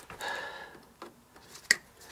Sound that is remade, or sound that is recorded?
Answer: recorded